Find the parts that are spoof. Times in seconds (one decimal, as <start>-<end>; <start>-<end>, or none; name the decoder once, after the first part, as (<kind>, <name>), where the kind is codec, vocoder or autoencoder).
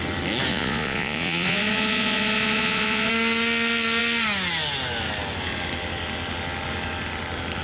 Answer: 0.5-3.1 (vocoder, Vocos)